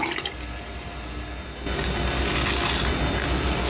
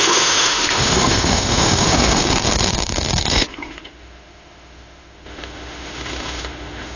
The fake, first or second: second